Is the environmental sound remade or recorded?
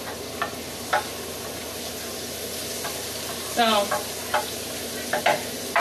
recorded